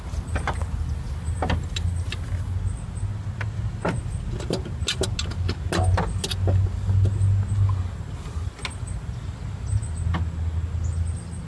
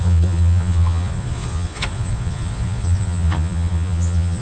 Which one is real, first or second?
first